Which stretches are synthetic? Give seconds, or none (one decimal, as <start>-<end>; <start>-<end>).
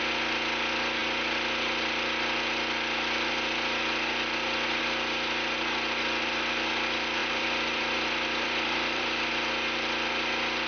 7.2-9.3